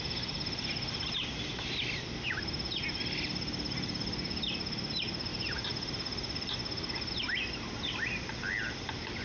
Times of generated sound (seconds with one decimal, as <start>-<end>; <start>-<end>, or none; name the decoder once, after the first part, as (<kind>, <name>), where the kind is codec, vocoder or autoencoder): none